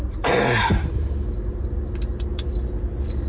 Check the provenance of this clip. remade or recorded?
recorded